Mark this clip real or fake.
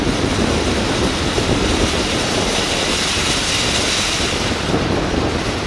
real